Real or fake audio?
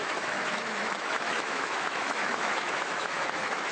fake